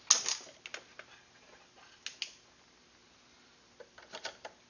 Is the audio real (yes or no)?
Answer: yes